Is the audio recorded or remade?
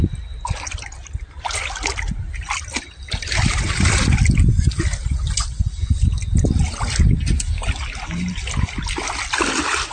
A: recorded